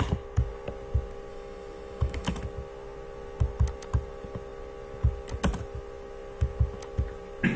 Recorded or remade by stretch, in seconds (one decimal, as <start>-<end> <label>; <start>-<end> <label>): 0.0-1.3 recorded; 1.3-2.4 remade; 2.4-7.6 recorded